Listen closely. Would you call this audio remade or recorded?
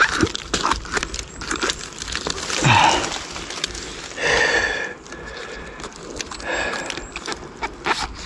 recorded